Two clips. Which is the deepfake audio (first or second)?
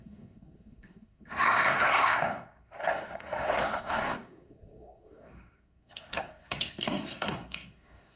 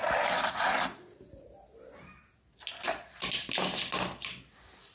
first